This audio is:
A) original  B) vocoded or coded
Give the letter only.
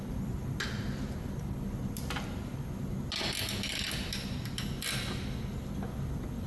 A